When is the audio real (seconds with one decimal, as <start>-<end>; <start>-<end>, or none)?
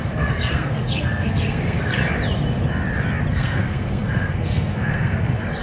2.0-3.3